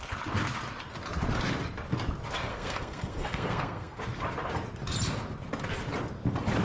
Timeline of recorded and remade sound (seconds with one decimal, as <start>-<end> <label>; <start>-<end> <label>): 0.0-2.5 recorded; 2.5-4.0 remade; 4.0-6.6 recorded

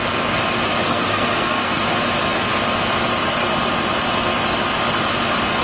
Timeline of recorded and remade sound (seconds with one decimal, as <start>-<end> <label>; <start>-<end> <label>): 0.0-0.9 recorded; 0.9-1.8 remade; 1.8-5.6 recorded

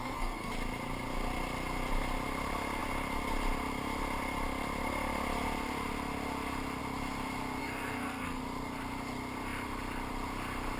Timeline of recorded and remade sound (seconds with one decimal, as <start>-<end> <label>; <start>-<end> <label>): 0.0-0.5 remade; 0.5-7.6 recorded; 7.6-8.4 remade; 8.4-10.8 recorded

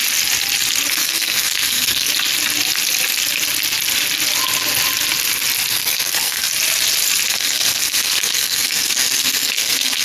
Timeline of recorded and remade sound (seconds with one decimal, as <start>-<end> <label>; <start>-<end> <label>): 0.0-0.9 recorded; 0.9-2.1 remade; 2.1-5.7 recorded; 5.7-6.5 remade; 6.5-7.3 recorded; 7.3-10.0 remade